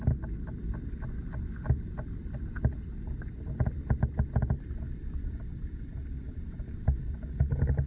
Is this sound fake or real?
real